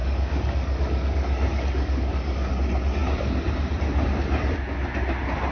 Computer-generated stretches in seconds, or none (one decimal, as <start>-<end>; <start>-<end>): 0.0-2.5